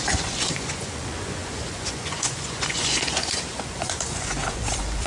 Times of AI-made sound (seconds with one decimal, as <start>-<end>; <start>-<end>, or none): 0.0-5.1